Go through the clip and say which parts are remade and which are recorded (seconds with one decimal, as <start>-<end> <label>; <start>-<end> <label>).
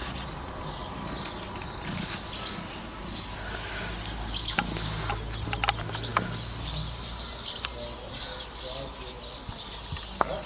0.0-10.5 recorded